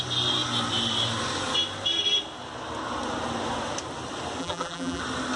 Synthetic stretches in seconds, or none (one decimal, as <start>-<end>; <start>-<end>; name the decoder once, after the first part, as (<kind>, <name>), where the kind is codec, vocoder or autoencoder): 4.4-5.0 (vocoder, BigVGAN v2)